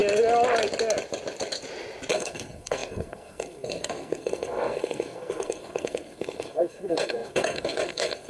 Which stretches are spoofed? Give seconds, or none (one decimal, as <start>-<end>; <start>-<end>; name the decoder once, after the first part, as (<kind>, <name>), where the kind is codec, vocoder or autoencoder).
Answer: 2.1-8.3 (codec, SNAC)